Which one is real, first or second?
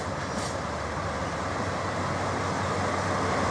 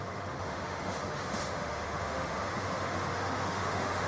first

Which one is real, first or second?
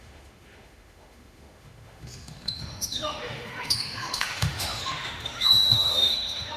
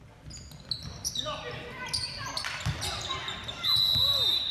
second